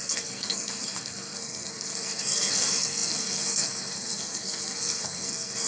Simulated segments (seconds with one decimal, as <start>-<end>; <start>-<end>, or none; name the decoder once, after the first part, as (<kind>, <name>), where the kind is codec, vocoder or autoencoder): 0.0-5.7 (codec, SNAC)